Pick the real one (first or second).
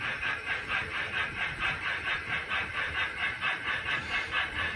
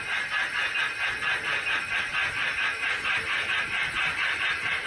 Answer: second